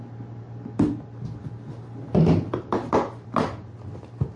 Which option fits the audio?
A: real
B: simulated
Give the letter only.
A